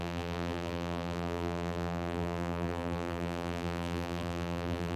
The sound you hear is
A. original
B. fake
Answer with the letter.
B